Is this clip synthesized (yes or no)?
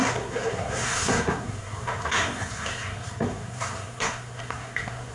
yes